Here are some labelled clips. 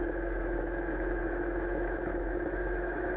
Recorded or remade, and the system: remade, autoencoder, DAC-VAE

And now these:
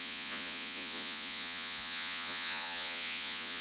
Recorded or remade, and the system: remade, vocoder, Vocos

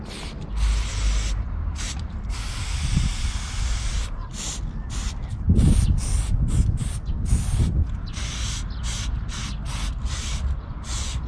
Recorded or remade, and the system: recorded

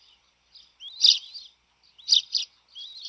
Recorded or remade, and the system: recorded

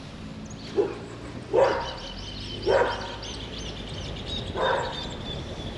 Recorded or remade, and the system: recorded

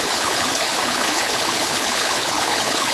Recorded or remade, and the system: remade, codec, HILCodec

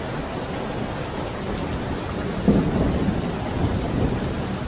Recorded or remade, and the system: recorded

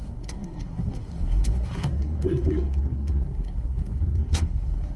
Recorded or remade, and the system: remade, codec, SNAC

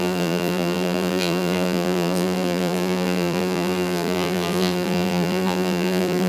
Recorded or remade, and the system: remade, vocoder, BigVGAN v2